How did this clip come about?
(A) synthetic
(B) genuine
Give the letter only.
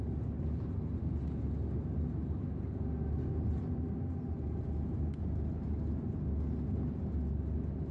B